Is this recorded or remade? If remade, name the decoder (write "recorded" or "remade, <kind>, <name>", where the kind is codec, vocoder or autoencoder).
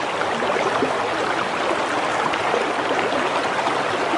recorded